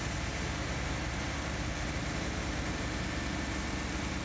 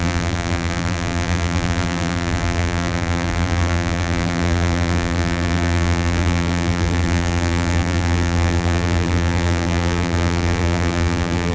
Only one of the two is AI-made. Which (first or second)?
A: second